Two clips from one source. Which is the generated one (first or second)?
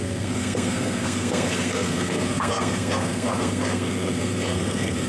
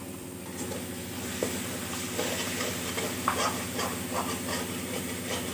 first